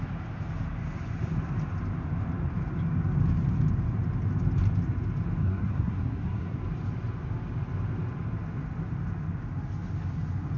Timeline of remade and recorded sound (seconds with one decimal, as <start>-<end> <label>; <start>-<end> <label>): 0.0-5.4 recorded; 5.4-6.6 remade; 6.6-10.6 recorded